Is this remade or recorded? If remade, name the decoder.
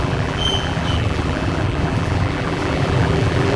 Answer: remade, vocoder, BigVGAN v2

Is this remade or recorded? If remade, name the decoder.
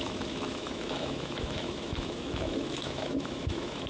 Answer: remade, autoencoder, DAC-VAE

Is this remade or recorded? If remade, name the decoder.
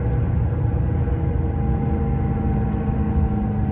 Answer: recorded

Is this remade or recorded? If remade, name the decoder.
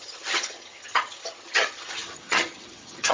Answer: remade, vocoder, HiFi-GAN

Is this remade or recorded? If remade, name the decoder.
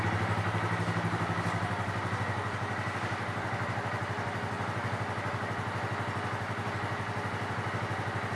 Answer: recorded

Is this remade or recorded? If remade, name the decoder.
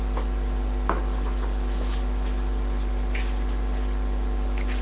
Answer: recorded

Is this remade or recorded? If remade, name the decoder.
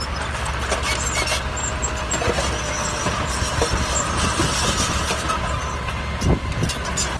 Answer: recorded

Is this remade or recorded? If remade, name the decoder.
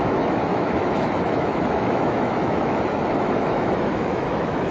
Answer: remade, autoencoder, DAC-VAE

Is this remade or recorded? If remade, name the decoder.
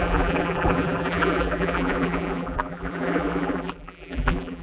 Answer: remade, vocoder, BigVGAN v2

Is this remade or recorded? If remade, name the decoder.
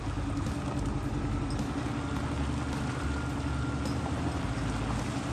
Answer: recorded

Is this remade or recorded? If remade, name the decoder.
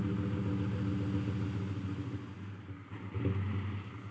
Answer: recorded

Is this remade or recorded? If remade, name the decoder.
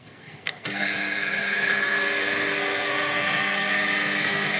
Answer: remade, codec, SNAC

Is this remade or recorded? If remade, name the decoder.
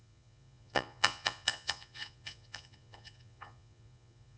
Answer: remade, vocoder, Vocos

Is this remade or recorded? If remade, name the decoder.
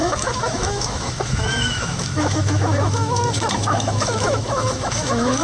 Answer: remade, autoencoder, DAC-VAE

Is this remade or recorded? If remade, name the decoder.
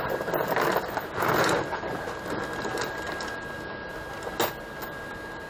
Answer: recorded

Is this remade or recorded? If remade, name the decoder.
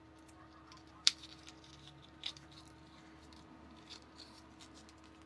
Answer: recorded